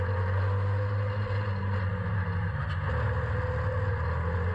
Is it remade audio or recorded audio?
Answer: recorded